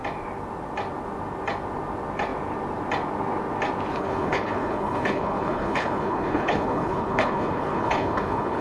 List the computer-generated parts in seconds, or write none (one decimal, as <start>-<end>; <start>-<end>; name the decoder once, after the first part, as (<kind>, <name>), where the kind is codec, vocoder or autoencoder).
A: 3.9-8.6 (codec, HILCodec)